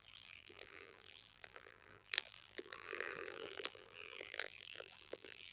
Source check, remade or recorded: remade